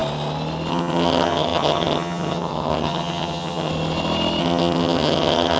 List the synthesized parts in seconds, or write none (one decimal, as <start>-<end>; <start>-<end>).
0.7-3.7; 4.4-5.6